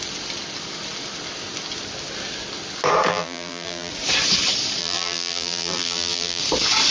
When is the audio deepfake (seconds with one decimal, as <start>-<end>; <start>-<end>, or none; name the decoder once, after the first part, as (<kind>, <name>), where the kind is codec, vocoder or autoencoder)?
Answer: 3.1-3.9 (vocoder, BigVGAN v2); 4.8-6.4